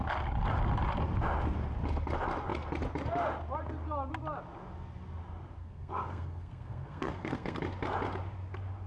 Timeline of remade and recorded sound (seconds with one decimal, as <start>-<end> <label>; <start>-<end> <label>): 0.0-5.6 recorded; 5.6-7.6 remade; 7.6-8.9 recorded